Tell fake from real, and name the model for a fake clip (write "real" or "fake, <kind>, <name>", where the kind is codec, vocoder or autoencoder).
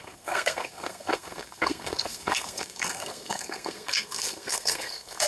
fake, codec, SNAC